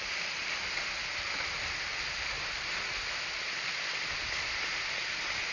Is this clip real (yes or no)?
yes